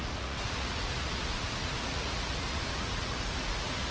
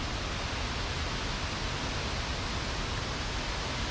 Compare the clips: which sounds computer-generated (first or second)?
first